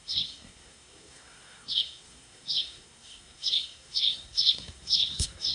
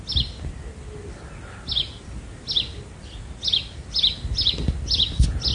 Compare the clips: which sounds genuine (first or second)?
second